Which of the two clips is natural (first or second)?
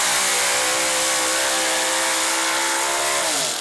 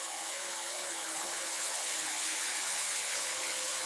first